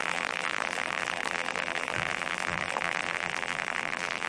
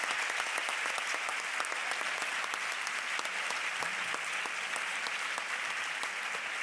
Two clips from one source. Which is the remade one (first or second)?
first